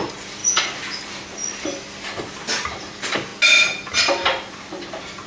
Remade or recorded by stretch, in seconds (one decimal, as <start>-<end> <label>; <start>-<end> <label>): 0.0-0.4 remade; 0.4-1.0 recorded; 1.0-1.4 remade; 1.4-2.3 recorded; 2.3-3.3 remade; 3.3-4.5 recorded; 4.5-5.3 remade